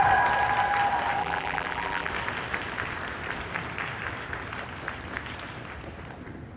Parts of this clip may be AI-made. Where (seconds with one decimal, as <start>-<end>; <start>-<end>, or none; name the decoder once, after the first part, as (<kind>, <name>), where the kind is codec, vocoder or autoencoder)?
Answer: 1.2-2.1 (vocoder, BigVGAN v2)